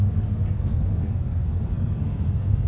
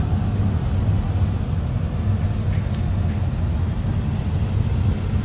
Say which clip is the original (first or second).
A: second